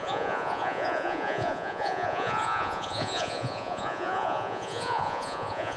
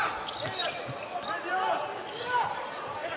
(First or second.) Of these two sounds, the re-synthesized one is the first